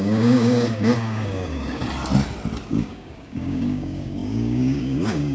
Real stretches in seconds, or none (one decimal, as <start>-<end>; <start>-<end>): 1.8-2.7